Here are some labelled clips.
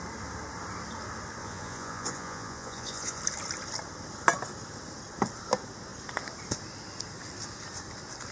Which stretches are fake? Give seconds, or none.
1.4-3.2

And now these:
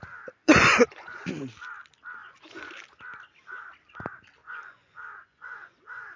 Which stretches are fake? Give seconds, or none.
0.4-1.3; 2.2-2.7; 4.4-6.2

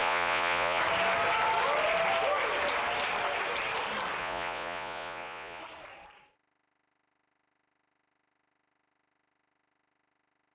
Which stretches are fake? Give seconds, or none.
0.0-0.8; 4.2-5.6

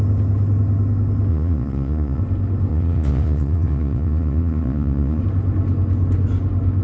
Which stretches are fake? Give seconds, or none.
1.3-2.2; 2.7-5.2

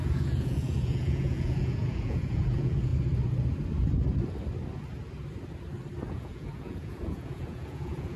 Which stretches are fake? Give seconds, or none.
0.0-2.9; 6.1-8.2

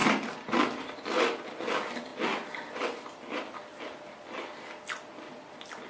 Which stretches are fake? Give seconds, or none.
none

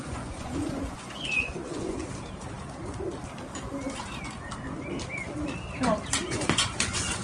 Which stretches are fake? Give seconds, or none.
0.0-2.0; 6.3-7.2

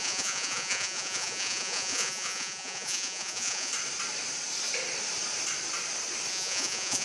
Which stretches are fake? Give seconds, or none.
0.0-3.7; 6.3-7.0